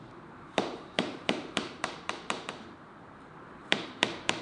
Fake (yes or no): yes